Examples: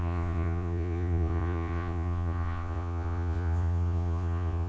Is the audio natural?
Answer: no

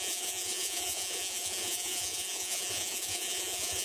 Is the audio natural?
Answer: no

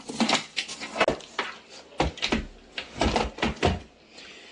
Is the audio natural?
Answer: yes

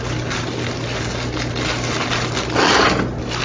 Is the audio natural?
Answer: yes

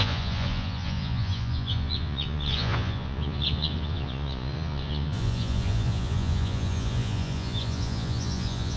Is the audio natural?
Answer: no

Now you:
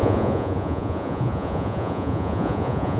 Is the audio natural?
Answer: no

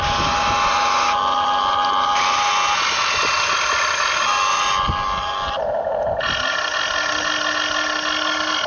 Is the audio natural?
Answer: yes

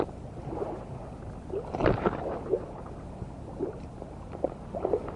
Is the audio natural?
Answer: yes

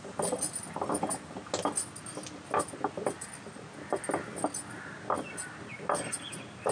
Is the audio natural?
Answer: yes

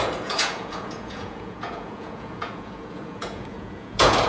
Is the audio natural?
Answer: no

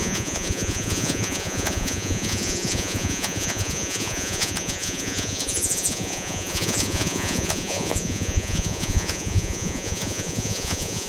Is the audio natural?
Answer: no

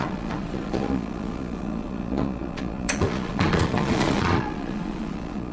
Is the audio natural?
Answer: no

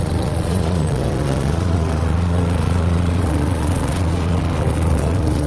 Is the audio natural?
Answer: no